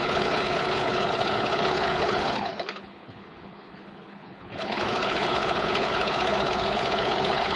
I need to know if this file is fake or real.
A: fake